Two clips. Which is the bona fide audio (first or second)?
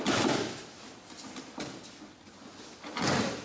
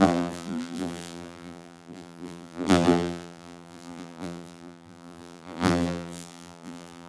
first